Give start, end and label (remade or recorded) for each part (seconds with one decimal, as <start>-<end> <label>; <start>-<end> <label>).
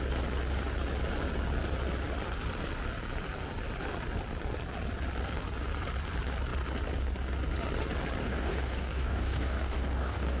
0.0-8.2 recorded; 8.2-10.4 remade